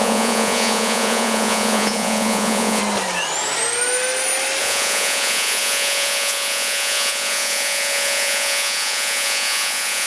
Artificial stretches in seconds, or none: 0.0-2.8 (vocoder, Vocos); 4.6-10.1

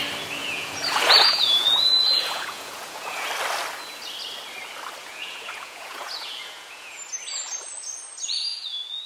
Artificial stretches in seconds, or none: 0.4-3.3 (vocoder, Vocos); 5.0-7.0; 8.5-9.1